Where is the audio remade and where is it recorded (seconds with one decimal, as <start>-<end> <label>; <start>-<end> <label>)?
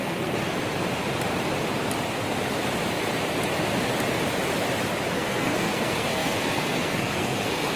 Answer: 0.0-0.4 remade; 0.4-5.1 recorded; 5.1-7.8 remade